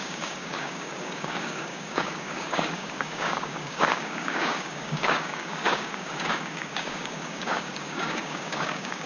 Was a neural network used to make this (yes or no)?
yes